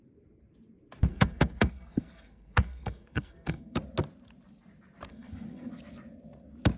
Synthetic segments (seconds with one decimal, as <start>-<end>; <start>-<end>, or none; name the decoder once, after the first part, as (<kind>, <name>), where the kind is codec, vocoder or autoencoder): 1.1-3.8 (codec, SNAC); 5.1-5.7